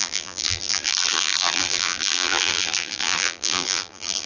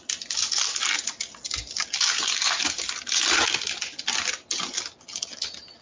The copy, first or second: first